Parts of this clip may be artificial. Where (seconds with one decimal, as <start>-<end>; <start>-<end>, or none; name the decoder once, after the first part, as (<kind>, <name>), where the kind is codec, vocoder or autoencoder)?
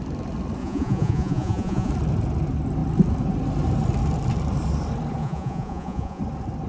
0.6-1.9 (vocoder, Vocos); 5.2-6.2